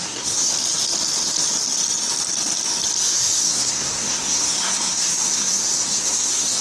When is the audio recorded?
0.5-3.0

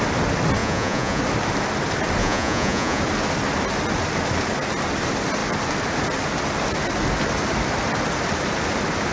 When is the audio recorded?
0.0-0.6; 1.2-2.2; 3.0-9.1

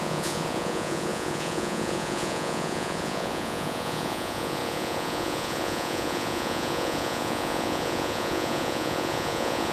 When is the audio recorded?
none

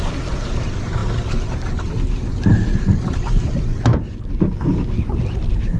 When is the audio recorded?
0.0-5.8

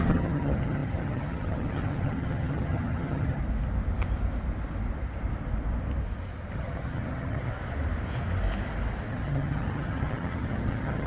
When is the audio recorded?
3.4-6.5; 7.5-9.1